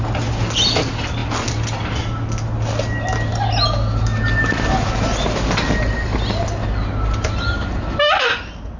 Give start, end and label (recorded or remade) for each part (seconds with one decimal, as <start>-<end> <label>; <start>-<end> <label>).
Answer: 0.0-8.8 recorded